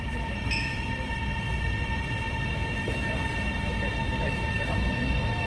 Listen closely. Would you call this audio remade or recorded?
recorded